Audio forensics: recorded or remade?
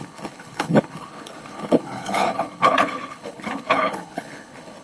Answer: remade